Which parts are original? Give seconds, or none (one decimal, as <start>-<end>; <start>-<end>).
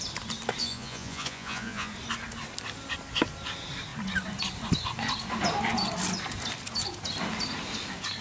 0.0-0.6; 1.9-8.2